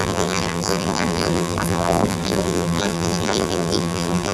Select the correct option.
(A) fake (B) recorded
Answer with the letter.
A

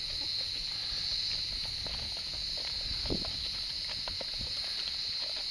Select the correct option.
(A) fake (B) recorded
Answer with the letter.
A